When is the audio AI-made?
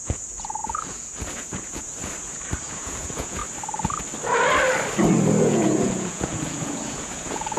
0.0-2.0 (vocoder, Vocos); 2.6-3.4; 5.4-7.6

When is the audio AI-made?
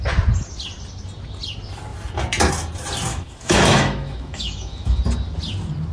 3.1-5.0 (autoencoder, DAC-VAE)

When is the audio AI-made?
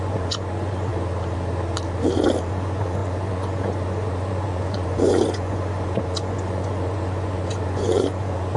0.0-0.9 (vocoder, Vocos); 2.5-8.6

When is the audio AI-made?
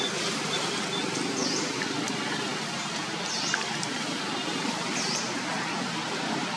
none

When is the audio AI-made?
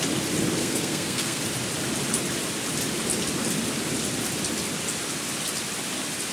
0.6-1.4 (codec, SNAC)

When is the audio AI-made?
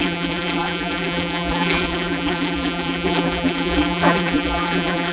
0.0-5.1 (vocoder, BigVGAN v2)